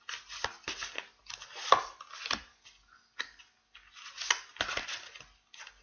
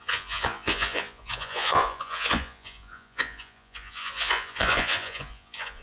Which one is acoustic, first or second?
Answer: first